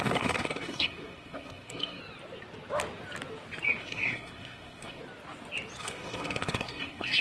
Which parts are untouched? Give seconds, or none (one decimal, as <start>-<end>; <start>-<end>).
2.0-3.8; 5.0-5.8